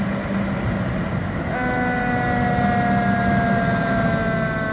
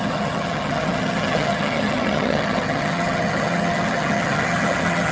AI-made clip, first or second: second